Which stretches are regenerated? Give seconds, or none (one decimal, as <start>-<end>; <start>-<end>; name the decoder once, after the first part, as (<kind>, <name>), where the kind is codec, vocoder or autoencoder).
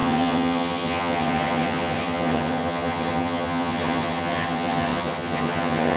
0.0-6.0 (vocoder, HiFi-GAN)